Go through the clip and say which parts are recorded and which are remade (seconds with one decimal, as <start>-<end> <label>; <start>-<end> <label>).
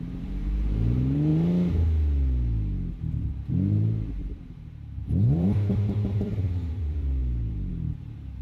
0.0-1.3 remade; 1.3-3.5 recorded; 3.5-8.4 remade